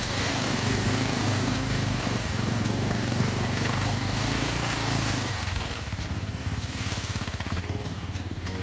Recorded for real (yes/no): no